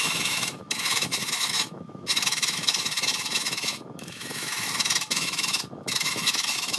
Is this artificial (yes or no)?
yes